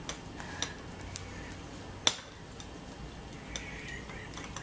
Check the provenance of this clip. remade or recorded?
recorded